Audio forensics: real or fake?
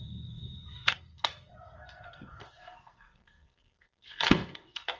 fake